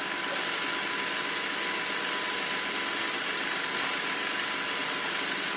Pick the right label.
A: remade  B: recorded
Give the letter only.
B